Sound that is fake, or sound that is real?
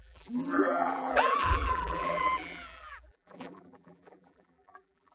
fake